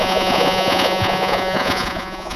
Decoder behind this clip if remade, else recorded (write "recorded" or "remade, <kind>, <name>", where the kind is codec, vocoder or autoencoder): remade, vocoder, Vocos